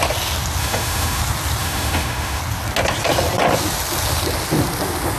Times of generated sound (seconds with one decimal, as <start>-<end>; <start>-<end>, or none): 0.6-1.2; 1.6-2.4